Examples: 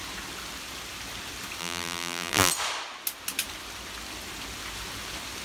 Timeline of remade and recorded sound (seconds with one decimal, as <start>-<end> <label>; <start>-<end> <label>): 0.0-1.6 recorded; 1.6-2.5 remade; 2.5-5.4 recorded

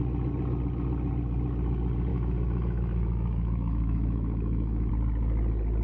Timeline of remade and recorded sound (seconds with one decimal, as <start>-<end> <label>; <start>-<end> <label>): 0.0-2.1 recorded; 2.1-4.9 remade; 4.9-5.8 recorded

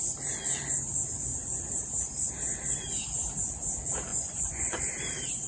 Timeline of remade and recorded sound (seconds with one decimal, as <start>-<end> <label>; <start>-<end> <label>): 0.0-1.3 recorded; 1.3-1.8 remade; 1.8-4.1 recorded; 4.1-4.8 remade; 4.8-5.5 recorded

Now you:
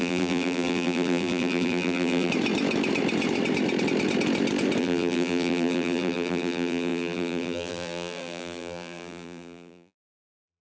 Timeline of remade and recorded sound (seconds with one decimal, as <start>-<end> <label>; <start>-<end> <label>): 0.0-2.3 remade; 2.3-4.8 recorded; 4.8-10.6 remade